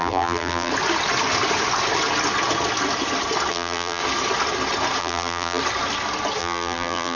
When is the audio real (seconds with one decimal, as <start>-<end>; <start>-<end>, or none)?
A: 0.7-3.5; 4.0-5.0; 5.6-6.4